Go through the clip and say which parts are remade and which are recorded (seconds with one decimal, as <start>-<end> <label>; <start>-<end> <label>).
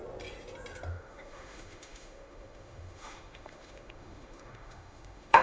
0.0-0.9 recorded; 0.9-5.4 remade